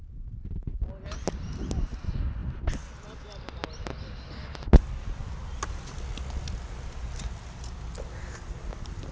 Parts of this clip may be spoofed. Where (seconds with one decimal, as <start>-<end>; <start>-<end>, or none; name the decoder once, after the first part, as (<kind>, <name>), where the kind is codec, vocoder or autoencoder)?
none